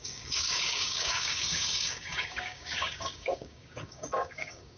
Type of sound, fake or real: fake